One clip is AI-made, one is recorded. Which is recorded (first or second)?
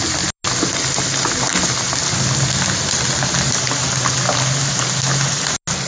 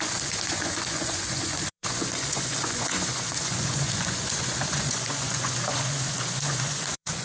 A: first